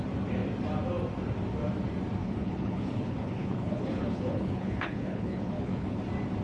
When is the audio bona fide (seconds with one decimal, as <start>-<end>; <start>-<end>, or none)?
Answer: 0.0-2.2; 6.0-6.4